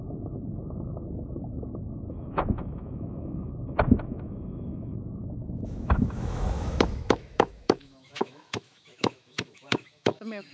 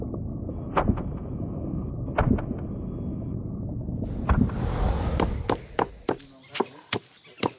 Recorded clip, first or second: second